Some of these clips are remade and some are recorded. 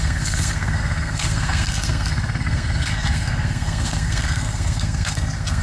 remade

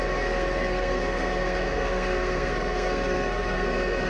remade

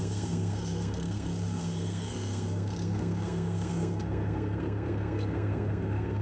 remade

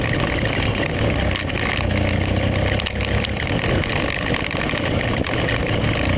recorded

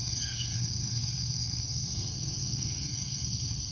remade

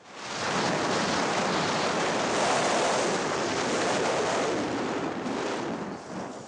recorded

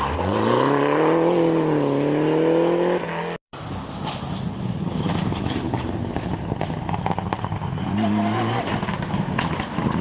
recorded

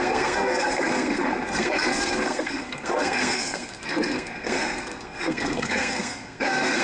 remade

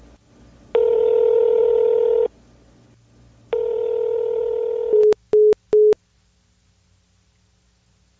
recorded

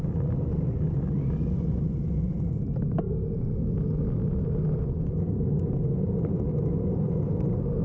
recorded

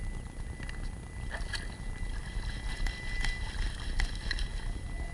recorded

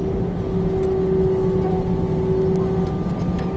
recorded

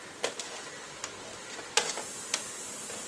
recorded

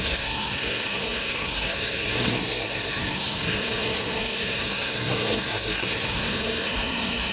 remade